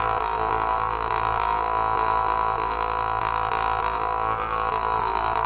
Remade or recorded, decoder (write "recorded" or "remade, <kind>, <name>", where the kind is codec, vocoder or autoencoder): recorded